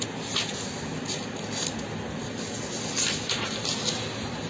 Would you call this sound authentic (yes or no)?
yes